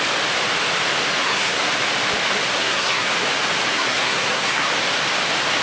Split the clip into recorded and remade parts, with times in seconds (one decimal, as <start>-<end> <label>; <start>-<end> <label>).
0.0-1.2 recorded; 1.2-1.7 remade; 1.7-2.6 recorded; 2.6-3.1 remade; 3.1-3.7 recorded; 3.7-4.7 remade; 4.7-5.6 recorded